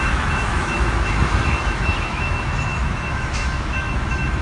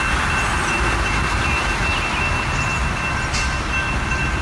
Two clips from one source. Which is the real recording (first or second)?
second